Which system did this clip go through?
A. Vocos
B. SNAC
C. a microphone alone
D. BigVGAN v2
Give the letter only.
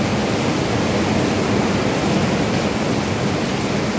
C